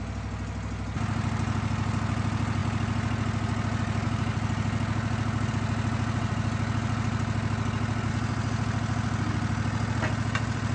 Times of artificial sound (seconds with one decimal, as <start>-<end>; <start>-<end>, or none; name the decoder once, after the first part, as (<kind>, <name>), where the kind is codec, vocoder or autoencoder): none